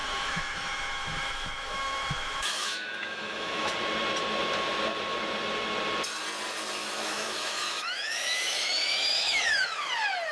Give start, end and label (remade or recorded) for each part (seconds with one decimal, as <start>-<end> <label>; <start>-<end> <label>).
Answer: 0.0-3.7 remade; 3.7-6.8 recorded; 6.8-9.9 remade; 9.9-10.3 recorded